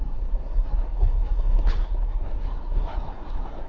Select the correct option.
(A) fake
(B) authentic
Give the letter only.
A